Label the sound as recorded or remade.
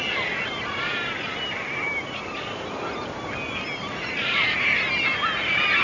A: recorded